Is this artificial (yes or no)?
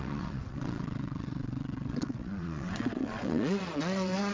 yes